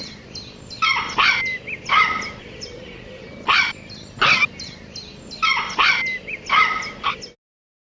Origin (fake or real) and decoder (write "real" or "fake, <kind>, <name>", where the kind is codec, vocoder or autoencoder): real